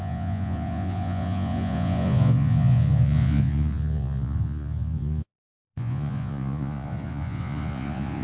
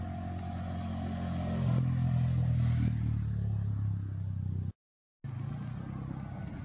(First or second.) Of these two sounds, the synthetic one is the first